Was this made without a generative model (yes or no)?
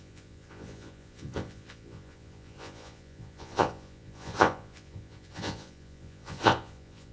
no